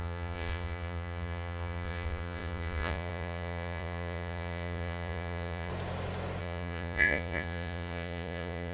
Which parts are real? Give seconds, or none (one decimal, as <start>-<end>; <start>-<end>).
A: 5.7-6.4